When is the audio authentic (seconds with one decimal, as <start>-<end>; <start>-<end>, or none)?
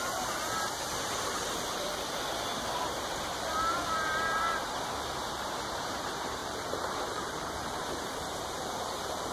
none